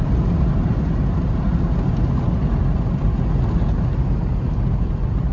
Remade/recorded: recorded